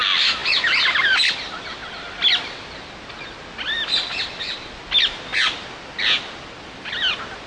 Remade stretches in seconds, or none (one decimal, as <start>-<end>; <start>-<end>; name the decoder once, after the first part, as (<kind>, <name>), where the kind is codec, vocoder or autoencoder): none